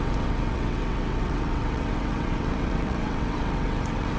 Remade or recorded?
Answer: remade